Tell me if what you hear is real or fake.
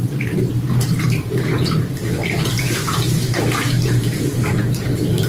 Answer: fake